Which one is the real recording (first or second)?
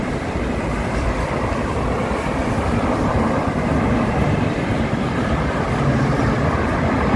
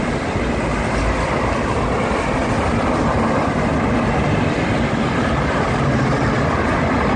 second